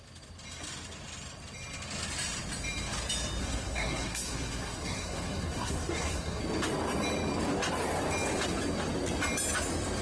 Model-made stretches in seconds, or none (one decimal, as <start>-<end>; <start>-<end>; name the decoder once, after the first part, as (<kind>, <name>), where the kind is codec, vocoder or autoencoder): 3.4-6.4 (codec, SNAC)